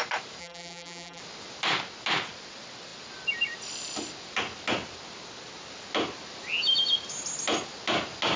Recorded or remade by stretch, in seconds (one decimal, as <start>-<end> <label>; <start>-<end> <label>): 0.0-0.4 recorded; 0.4-1.2 remade; 1.2-8.4 recorded